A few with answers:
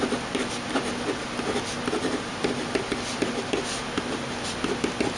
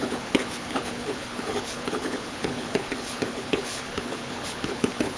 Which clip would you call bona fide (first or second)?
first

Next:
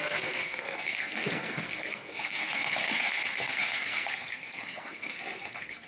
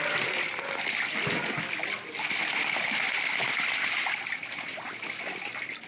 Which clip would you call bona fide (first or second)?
second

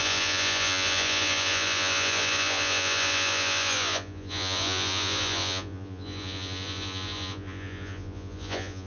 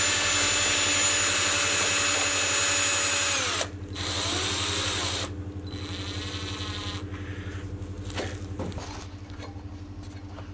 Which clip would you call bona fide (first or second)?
second